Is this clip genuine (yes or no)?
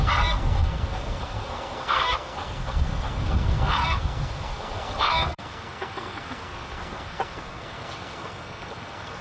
no